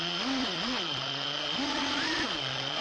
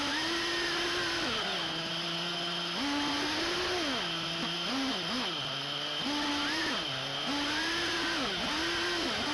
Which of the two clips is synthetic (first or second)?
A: first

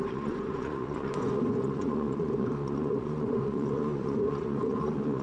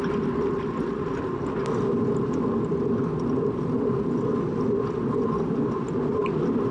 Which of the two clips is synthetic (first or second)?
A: first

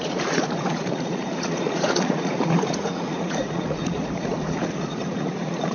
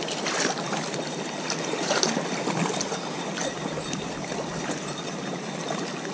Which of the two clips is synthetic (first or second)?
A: first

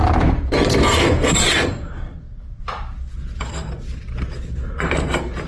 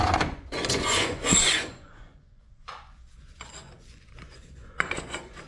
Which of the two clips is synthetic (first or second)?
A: second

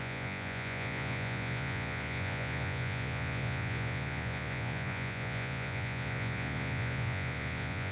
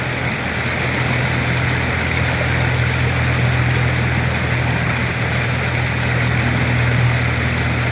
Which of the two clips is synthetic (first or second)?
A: first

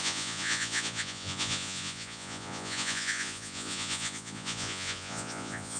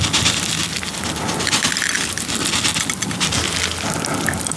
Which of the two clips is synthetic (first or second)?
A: first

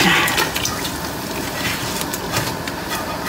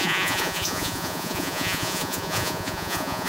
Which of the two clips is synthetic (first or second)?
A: second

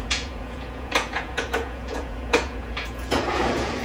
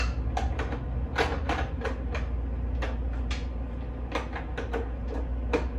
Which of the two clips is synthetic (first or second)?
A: first